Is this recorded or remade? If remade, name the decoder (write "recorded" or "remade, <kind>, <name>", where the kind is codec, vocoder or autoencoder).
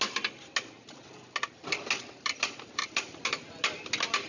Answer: recorded